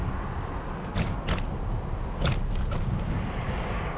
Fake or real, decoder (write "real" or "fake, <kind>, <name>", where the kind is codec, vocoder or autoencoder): real